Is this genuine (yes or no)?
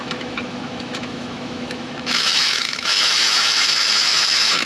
no